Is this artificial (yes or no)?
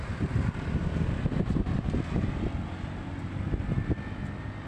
no